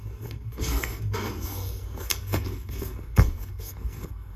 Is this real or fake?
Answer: fake